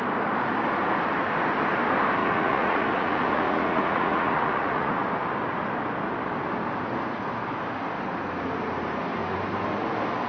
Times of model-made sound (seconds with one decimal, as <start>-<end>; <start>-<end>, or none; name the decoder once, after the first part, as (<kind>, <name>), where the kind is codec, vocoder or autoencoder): 2.2-5.0 (vocoder, Vocos)